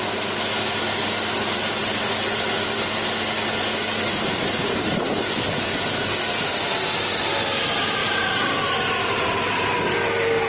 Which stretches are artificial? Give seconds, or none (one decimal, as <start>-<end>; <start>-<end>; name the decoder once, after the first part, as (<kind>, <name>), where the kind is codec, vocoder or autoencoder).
8.0-8.5 (vocoder, BigVGAN v2); 9.0-9.7